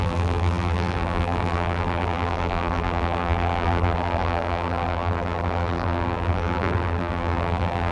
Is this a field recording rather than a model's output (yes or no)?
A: no